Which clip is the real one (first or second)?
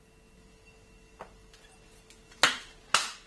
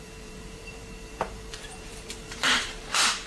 first